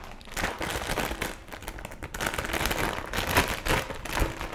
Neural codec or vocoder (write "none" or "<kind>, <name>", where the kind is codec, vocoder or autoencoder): none